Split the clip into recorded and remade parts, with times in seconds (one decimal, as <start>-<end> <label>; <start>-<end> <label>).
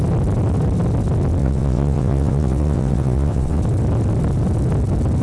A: 0.0-1.4 recorded; 1.4-3.6 remade; 3.6-5.2 recorded